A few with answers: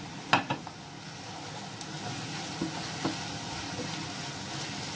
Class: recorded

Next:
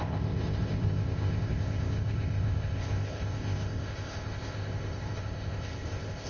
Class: remade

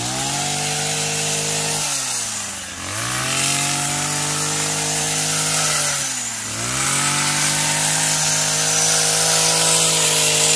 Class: recorded